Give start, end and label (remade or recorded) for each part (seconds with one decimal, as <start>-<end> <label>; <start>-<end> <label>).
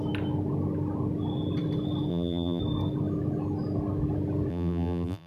0.0-2.1 recorded; 2.1-2.6 remade; 2.6-4.5 recorded; 4.5-5.3 remade